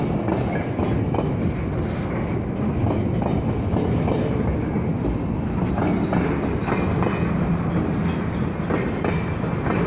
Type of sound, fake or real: real